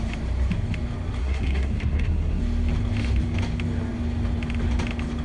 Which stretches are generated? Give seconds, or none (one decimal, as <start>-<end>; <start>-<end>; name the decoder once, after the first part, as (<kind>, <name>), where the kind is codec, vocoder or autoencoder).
1.2-2.4 (codec, SNAC)